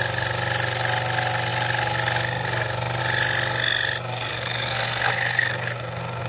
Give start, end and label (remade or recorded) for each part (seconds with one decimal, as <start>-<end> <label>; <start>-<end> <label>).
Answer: 0.0-4.3 recorded; 4.3-6.3 remade